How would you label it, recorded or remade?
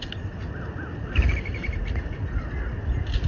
recorded